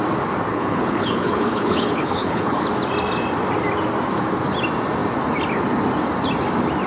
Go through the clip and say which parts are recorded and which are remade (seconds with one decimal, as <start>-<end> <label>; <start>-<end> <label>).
0.0-0.5 recorded; 0.5-2.6 remade; 2.6-6.9 recorded